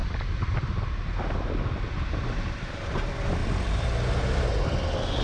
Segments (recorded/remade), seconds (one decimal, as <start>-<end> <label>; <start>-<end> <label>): 0.0-3.4 recorded; 3.4-4.5 remade; 4.5-5.2 recorded